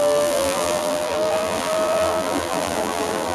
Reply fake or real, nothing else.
fake